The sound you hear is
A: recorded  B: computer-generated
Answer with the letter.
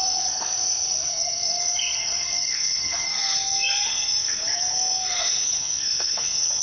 B